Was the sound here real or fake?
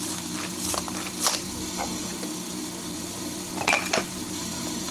fake